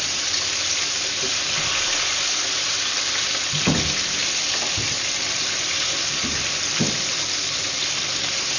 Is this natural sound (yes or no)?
no